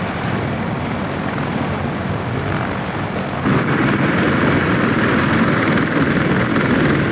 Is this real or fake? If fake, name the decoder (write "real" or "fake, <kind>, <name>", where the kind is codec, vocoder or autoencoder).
real